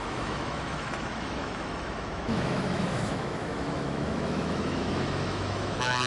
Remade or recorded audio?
remade